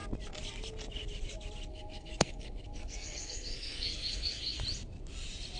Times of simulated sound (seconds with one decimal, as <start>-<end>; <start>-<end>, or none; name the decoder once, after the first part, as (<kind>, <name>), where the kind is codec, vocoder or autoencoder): 1.7-4.6 (codec, SNAC)